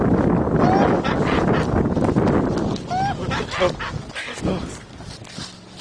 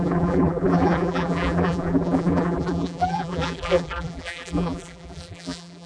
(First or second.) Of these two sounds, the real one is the first